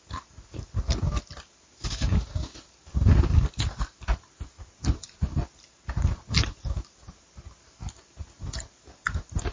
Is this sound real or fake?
real